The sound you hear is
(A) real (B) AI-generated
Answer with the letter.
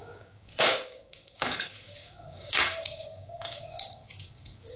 B